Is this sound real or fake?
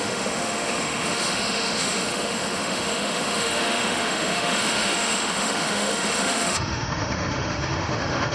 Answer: fake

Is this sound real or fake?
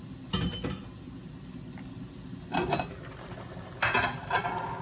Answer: real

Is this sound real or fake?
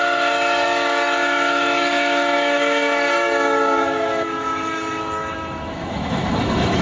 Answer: fake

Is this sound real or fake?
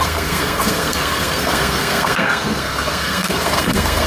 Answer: fake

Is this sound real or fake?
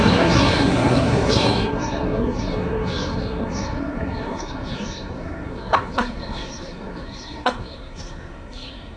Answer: fake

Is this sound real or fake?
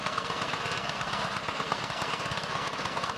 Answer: fake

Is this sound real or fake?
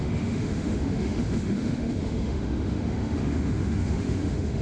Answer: fake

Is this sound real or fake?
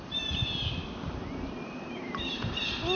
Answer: real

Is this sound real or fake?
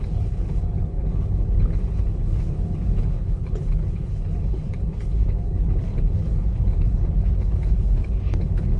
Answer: fake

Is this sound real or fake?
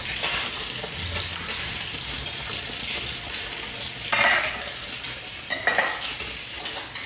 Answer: real